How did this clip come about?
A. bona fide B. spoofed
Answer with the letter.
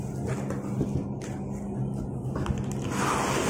A